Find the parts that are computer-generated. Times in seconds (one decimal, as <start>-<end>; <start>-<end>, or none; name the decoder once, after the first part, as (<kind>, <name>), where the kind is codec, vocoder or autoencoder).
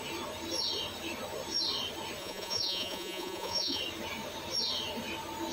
2.2-3.8 (vocoder, Vocos)